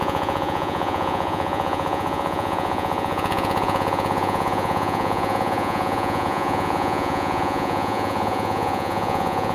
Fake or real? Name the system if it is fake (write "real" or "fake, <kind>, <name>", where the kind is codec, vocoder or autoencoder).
fake, vocoder, Vocos